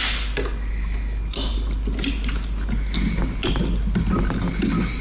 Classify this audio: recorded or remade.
recorded